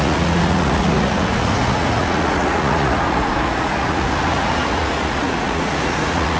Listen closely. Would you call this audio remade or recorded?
remade